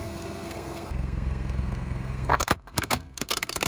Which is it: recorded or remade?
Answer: remade